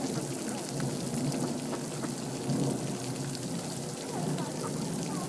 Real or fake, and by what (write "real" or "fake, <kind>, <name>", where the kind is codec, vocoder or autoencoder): real